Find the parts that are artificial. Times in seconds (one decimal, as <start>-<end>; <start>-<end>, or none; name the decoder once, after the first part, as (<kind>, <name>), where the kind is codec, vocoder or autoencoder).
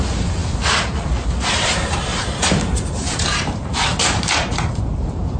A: 0.0-0.4 (vocoder, BigVGAN v2); 1.5-5.4